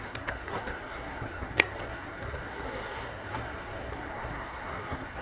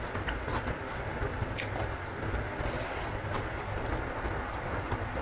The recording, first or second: second